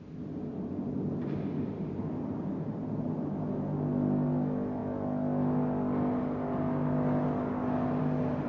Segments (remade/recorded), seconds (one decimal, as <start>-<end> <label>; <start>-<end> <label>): 0.0-8.5 recorded

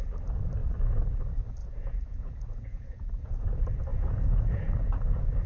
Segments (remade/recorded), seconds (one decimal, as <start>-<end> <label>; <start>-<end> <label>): 0.0-1.6 recorded; 1.6-3.5 remade; 3.5-3.9 recorded; 3.9-5.5 remade

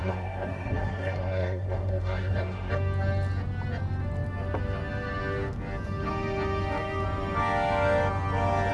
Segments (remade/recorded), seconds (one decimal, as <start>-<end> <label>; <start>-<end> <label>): 0.0-2.7 remade; 2.7-8.7 recorded

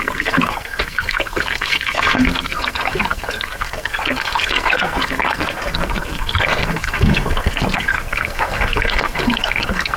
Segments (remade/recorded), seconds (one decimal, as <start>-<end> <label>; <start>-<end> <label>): 0.0-10.0 remade